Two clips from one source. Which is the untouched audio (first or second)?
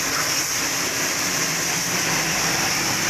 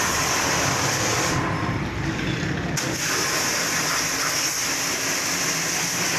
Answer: second